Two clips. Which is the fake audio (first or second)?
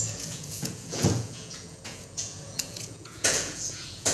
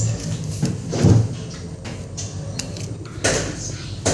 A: first